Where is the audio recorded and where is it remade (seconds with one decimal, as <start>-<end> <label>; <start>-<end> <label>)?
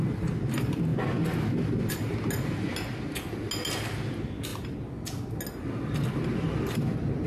0.0-7.3 recorded